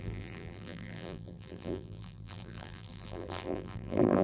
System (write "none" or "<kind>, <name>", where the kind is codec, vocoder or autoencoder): vocoder, BigVGAN v2